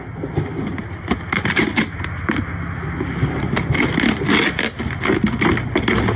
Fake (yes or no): no